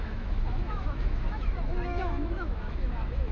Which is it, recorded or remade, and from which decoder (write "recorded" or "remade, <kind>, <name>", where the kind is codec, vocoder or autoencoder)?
remade, autoencoder, DAC-VAE